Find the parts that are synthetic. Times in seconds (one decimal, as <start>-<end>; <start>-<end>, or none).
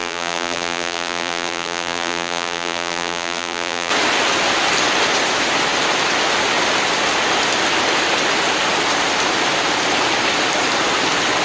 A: 0.0-3.9